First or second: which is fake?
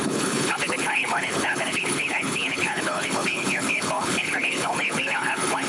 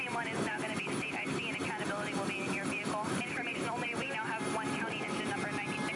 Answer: first